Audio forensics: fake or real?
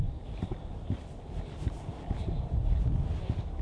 real